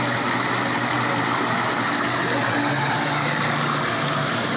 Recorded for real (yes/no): yes